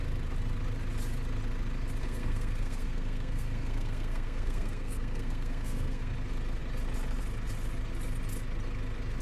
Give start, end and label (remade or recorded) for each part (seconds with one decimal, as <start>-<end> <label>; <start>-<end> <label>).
0.0-2.0 recorded; 2.0-6.1 remade; 6.1-9.2 recorded